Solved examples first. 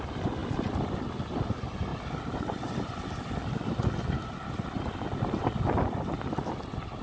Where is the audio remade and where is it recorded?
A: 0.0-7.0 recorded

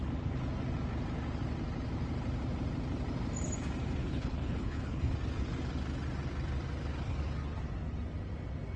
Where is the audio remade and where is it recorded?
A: 0.0-4.0 recorded; 4.0-5.1 remade; 5.1-8.8 recorded

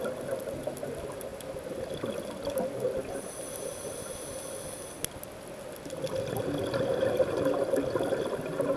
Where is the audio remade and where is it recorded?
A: 0.0-8.8 recorded

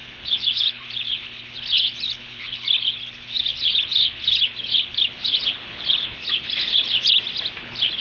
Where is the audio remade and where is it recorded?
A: 0.0-7.1 remade; 7.1-7.6 recorded; 7.6-8.0 remade